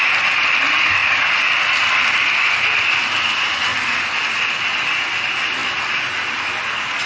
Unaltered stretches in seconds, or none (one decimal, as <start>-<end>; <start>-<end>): 0.0-7.1